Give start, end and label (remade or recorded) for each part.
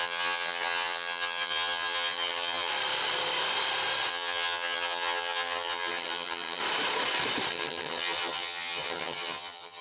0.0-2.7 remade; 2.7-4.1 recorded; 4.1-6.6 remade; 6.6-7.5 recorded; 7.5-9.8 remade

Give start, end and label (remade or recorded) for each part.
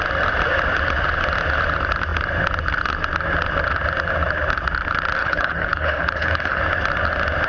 0.0-5.2 recorded; 5.2-6.6 remade; 6.6-7.5 recorded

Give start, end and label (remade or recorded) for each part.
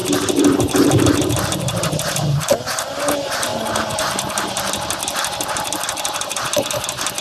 0.0-3.0 remade; 3.0-3.5 recorded; 3.5-4.7 remade; 4.7-7.2 recorded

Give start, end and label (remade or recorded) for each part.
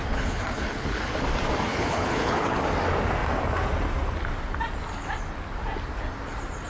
0.0-1.1 remade; 1.1-1.7 recorded; 1.7-2.6 remade; 2.6-6.7 recorded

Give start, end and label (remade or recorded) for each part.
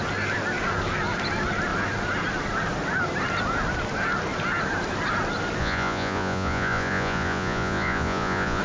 0.0-5.6 recorded; 5.6-8.6 remade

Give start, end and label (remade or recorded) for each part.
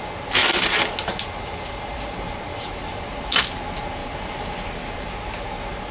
0.0-0.4 recorded; 0.4-3.4 remade; 3.4-4.0 recorded; 4.0-4.7 remade; 4.7-5.9 recorded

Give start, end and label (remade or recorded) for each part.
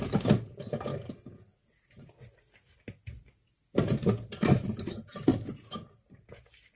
0.0-6.8 recorded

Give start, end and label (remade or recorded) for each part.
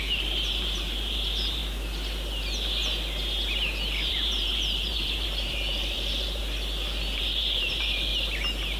0.0-1.6 remade; 1.6-4.1 recorded; 4.1-6.4 remade; 6.4-7.2 recorded; 7.2-8.1 remade; 8.1-8.8 recorded